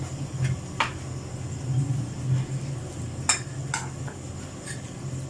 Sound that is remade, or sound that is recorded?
recorded